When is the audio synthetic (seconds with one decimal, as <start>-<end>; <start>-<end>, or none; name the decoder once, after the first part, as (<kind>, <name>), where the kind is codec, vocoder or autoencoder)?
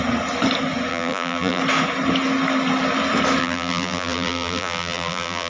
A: 0.9-1.6 (vocoder, BigVGAN v2); 3.4-5.5